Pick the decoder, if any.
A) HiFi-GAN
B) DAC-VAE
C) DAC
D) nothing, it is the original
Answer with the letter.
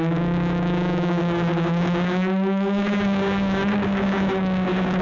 C